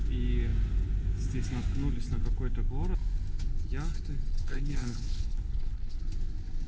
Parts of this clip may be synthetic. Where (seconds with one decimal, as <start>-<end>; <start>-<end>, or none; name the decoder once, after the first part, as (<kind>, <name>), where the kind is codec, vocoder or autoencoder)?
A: 4.3-6.0 (codec, HILCodec)